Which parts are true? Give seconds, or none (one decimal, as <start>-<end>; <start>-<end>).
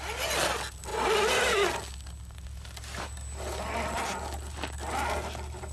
0.0-5.7